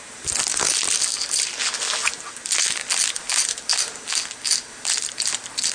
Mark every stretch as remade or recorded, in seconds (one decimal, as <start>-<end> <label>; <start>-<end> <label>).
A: 0.0-5.7 recorded